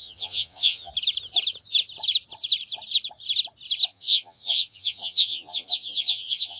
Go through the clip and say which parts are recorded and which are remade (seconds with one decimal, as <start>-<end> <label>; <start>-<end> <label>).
0.0-0.9 remade; 0.9-3.9 recorded; 3.9-6.6 remade